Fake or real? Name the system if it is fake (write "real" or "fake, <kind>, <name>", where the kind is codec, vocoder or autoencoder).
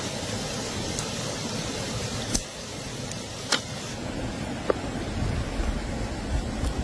real